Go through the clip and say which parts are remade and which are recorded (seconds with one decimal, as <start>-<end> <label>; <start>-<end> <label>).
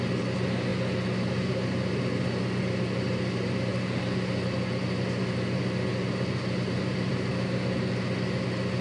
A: 0.0-8.8 recorded